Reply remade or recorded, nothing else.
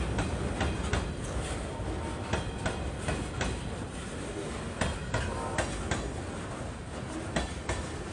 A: recorded